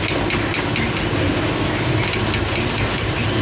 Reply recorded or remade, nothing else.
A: recorded